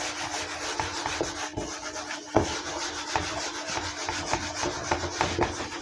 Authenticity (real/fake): real